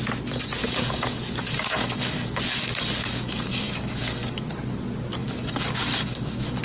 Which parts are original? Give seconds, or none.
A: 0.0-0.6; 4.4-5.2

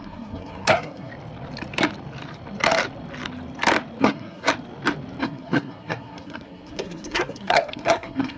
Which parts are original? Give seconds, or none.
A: 1.1-4.0; 4.5-5.2